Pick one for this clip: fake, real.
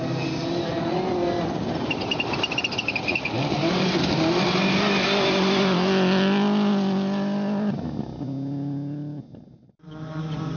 real